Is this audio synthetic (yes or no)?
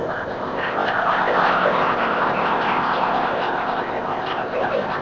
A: yes